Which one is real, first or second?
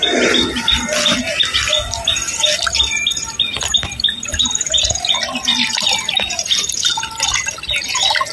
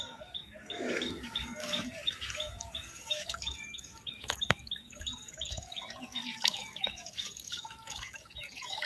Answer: first